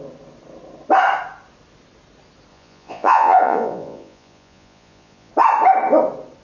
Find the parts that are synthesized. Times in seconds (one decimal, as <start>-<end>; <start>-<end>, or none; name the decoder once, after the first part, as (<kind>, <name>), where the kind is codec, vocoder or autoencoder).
2.5-5.3 (vocoder, Vocos)